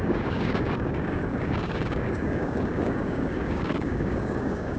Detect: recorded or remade remade